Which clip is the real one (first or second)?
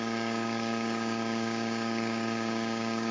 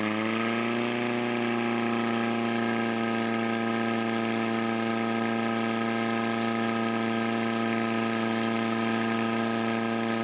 second